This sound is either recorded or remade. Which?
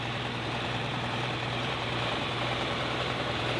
remade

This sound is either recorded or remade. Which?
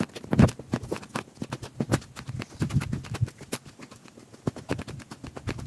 recorded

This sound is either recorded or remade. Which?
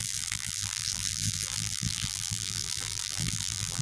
remade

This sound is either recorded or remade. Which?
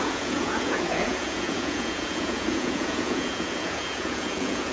remade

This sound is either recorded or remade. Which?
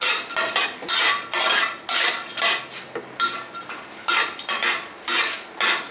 recorded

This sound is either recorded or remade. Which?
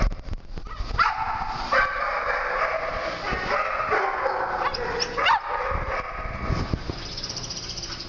recorded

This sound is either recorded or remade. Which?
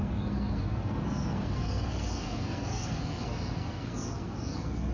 remade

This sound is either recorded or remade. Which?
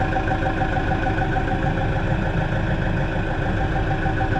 recorded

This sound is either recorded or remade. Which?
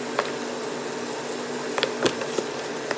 recorded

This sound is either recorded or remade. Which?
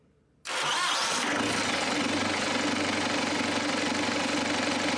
recorded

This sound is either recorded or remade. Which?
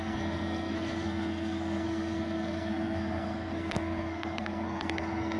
remade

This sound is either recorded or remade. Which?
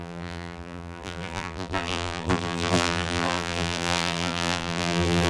remade